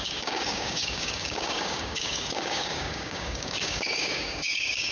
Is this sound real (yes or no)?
no